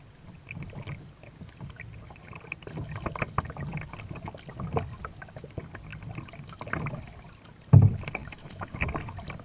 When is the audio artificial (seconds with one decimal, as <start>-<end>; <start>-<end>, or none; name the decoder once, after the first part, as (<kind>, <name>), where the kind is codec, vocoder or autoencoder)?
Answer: 8.2-8.8 (autoencoder, DAC-VAE)